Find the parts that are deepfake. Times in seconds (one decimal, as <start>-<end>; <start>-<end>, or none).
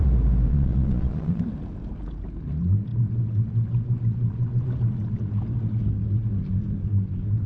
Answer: 0.5-1.4